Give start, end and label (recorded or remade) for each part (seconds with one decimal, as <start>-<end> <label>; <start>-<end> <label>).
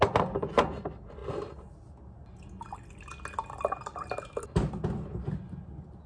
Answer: 0.0-6.1 recorded